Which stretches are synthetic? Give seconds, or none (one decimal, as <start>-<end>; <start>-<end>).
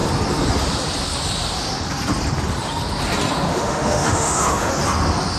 3.5-4.7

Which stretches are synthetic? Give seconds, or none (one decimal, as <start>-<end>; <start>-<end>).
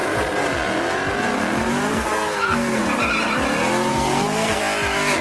1.9-2.8; 3.9-4.6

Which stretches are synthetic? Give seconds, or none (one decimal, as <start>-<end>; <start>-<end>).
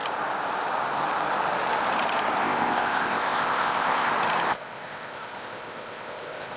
2.4-4.1; 4.5-6.6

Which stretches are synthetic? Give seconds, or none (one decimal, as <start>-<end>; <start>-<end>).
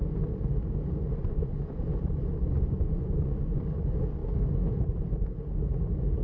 1.2-1.8; 2.3-3.6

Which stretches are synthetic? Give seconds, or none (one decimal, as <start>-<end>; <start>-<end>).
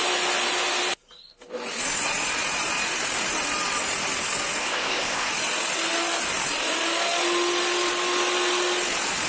4.6-5.3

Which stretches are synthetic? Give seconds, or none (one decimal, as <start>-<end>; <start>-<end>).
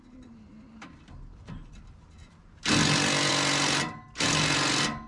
none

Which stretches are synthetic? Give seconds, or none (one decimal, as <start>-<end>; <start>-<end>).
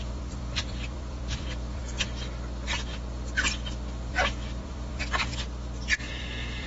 0.0-1.8; 4.1-5.3; 6.1-6.7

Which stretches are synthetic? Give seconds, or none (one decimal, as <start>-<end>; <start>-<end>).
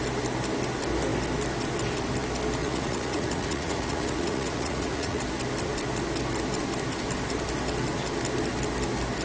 2.6-5.2